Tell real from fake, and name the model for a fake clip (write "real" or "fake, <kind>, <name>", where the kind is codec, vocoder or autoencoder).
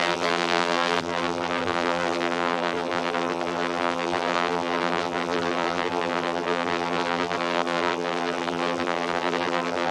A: fake, vocoder, BigVGAN v2